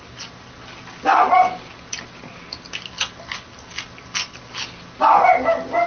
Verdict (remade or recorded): recorded